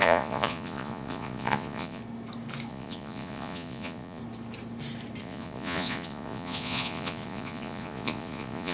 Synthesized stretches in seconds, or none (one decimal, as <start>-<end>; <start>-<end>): 0.0-2.0; 2.7-4.2; 5.2-8.7